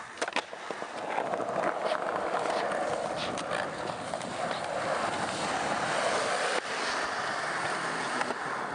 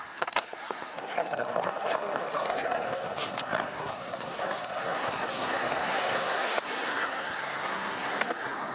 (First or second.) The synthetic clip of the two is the second